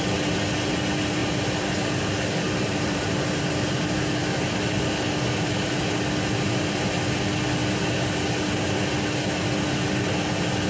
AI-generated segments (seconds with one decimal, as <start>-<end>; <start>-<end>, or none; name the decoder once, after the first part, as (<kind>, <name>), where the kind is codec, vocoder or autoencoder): 2.7-3.4 (vocoder, BigVGAN v2)

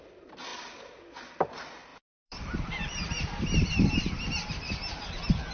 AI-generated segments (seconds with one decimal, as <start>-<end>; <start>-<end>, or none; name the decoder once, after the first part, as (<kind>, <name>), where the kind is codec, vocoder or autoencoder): 1.9-3.9 (vocoder, BigVGAN v2)